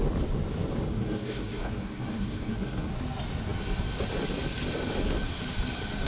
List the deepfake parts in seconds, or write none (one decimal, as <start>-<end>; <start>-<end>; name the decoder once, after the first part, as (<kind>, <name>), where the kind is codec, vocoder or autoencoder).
0.9-2.9 (codec, SNAC)